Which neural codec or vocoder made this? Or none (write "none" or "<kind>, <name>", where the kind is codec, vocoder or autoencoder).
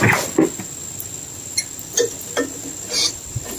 none